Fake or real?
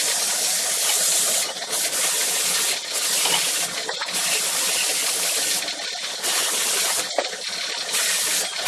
real